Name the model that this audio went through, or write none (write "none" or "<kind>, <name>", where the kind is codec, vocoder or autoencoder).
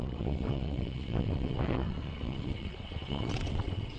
vocoder, WaveNeXt